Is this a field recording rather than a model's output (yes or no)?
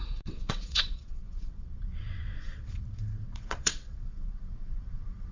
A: no